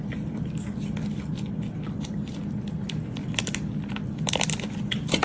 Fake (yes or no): no